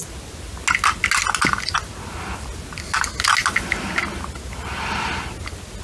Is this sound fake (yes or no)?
no